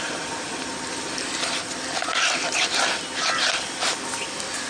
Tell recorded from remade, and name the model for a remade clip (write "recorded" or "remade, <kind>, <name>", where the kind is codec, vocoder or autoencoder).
recorded